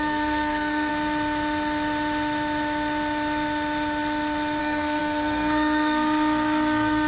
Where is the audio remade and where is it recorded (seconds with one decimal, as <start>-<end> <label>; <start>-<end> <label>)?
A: 0.0-0.9 remade; 0.9-4.6 recorded; 4.6-7.1 remade